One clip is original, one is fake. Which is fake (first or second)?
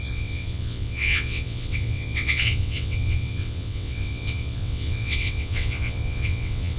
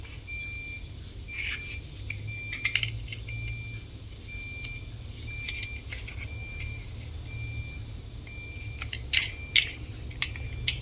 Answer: first